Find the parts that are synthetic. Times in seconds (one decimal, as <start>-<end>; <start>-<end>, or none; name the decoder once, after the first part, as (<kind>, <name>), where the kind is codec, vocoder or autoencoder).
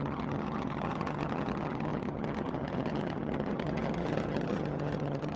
0.0-5.4 (vocoder, HiFi-GAN)